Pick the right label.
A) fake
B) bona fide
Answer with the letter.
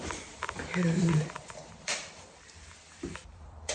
A